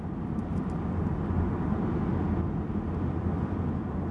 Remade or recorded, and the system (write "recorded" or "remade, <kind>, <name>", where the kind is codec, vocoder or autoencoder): recorded